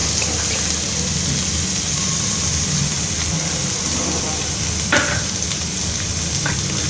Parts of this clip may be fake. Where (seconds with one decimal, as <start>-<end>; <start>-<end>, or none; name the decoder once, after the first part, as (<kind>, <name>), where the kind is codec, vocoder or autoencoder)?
none